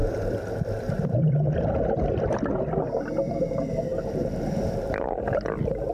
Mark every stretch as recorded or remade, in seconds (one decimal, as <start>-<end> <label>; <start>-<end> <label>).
0.0-1.3 remade; 1.3-3.9 recorded; 3.9-4.9 remade; 4.9-5.9 recorded